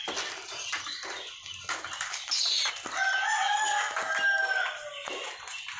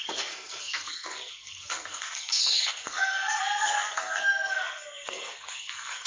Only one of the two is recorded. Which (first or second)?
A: first